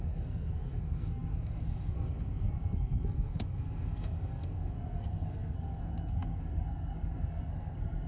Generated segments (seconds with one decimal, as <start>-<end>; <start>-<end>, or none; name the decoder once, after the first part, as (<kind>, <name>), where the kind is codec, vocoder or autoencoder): 0.0-8.1 (codec, SNAC)